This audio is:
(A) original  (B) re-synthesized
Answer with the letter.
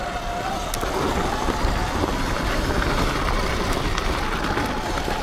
A